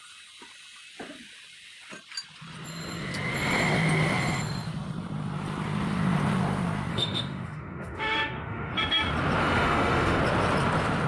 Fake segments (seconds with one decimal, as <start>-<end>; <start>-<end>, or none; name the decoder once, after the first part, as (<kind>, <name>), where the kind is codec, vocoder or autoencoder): 6.9-8.7 (autoencoder, DAC-VAE); 9.4-10.2